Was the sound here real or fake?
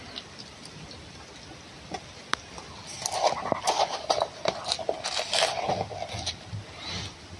real